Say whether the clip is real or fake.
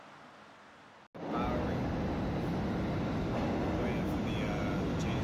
real